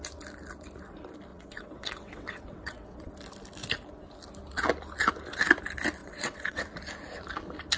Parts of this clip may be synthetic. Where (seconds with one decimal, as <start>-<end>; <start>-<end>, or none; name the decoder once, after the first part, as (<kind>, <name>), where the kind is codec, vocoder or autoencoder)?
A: 1.3-3.1 (vocoder, WaveNeXt); 6.0-6.6